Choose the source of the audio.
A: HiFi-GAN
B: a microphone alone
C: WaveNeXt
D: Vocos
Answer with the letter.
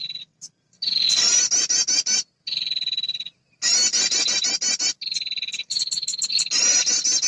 B